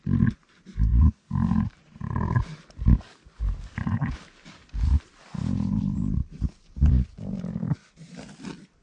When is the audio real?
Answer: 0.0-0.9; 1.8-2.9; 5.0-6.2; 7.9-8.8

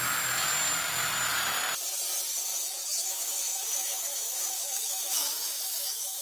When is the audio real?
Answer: 0.0-2.5

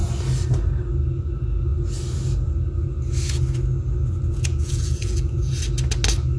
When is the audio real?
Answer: 0.0-4.3; 5.5-6.4

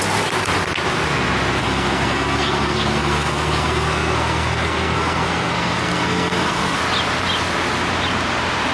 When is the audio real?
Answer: 0.0-1.6; 6.8-8.7

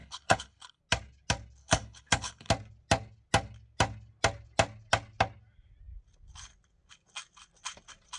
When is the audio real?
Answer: 0.8-1.6; 2.5-8.2